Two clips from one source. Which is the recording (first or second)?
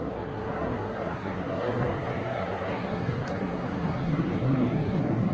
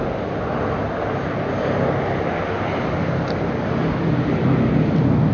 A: second